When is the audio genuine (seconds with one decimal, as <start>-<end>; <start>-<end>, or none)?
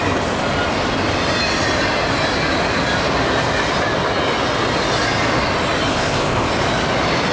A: 0.0-5.9; 6.5-7.3